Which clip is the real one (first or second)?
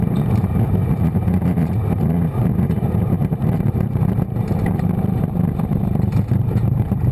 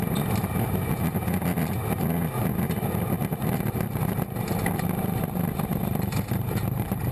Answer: second